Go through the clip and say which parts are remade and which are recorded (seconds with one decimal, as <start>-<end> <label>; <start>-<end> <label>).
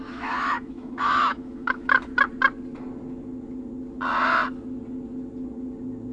0.0-2.1 remade; 2.1-6.1 recorded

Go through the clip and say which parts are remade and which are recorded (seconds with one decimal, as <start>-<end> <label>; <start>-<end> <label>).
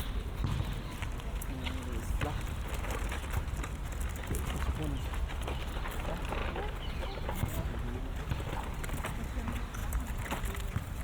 0.0-9.8 recorded; 9.8-11.0 remade